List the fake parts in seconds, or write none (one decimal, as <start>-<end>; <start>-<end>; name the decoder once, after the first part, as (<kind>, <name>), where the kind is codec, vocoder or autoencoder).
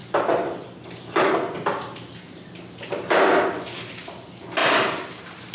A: none